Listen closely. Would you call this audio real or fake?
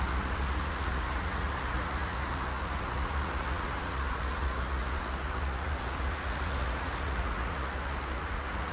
fake